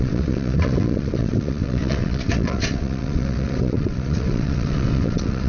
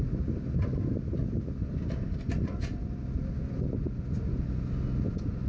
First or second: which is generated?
first